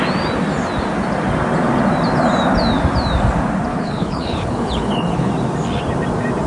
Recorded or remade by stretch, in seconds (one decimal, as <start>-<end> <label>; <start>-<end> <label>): 0.0-3.7 recorded; 3.7-5.3 remade; 5.3-6.5 recorded